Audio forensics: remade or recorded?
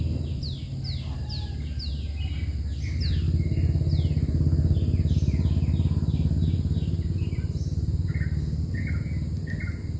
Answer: recorded